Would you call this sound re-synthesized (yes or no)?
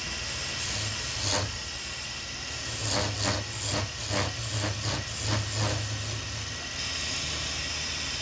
no